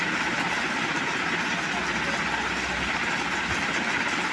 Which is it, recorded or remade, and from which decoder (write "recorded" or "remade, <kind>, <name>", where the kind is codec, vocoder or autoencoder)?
recorded